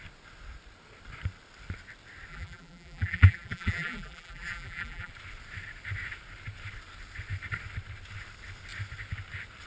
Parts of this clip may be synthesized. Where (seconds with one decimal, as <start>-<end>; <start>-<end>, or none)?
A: 2.3-5.1